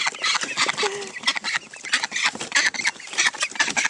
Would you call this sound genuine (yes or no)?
yes